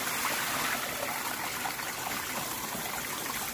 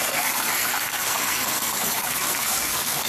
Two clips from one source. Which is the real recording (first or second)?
first